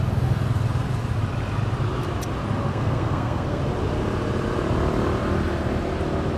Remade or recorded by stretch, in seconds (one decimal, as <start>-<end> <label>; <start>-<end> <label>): 0.0-2.7 recorded; 2.7-3.6 remade; 3.6-6.4 recorded